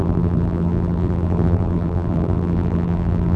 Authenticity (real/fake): fake